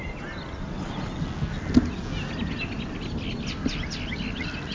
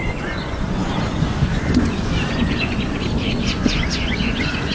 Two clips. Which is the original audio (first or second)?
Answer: first